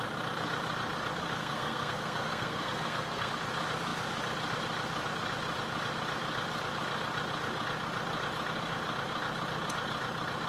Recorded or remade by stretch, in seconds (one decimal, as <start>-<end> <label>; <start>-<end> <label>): 0.0-1.4 recorded; 1.4-3.3 remade; 3.3-10.5 recorded